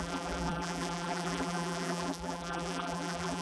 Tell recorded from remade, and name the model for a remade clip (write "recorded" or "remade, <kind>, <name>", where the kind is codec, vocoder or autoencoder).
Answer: remade, vocoder, BigVGAN v2